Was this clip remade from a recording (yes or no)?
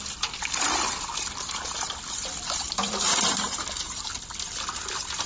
yes